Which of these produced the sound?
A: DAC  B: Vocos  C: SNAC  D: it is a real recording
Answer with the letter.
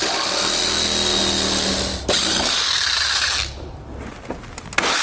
D